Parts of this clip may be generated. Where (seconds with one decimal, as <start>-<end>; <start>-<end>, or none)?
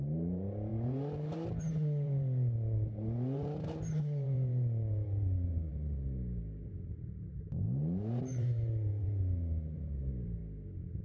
0.0-10.4